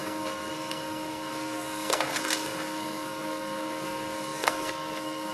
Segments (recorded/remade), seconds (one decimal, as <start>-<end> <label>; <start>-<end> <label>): 0.0-5.3 remade